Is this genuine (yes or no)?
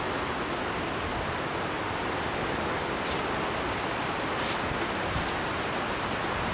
yes